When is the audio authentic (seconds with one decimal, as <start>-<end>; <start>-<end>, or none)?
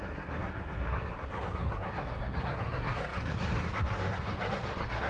none